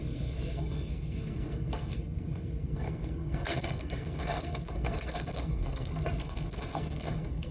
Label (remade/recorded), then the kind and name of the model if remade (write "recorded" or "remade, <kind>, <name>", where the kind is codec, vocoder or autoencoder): remade, codec, SNAC